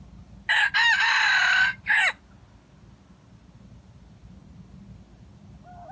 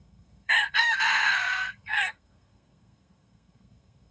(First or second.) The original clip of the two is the first